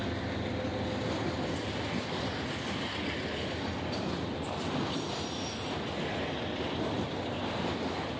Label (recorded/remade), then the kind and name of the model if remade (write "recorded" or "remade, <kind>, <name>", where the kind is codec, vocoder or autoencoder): recorded